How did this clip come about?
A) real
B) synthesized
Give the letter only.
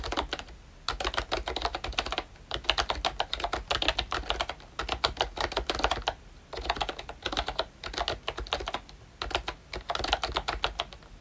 A